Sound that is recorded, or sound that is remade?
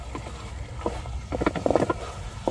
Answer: recorded